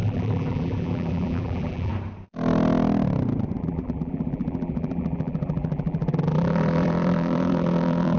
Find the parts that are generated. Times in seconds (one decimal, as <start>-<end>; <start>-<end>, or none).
0.0-1.9; 3.6-8.2